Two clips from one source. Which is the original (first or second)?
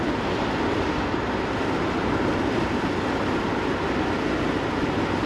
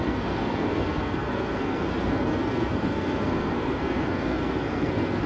first